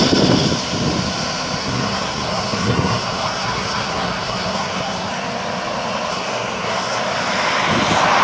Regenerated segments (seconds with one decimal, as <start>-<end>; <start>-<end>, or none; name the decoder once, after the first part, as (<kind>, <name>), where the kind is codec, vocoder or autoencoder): 1.6-5.1 (codec, SNAC); 6.1-7.0